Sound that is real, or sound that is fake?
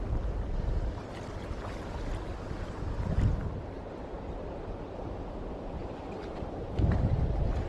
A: real